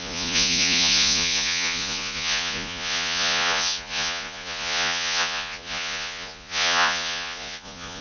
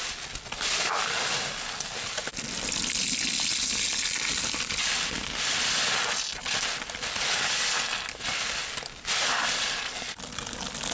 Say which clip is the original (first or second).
second